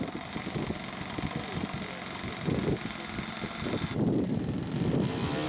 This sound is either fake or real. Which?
real